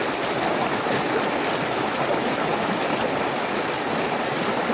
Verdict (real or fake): real